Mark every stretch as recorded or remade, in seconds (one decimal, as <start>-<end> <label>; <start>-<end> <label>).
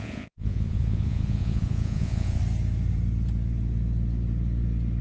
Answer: 0.0-2.4 remade; 2.4-5.0 recorded